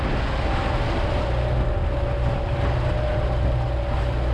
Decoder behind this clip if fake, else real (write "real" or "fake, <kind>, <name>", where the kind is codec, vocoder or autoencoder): real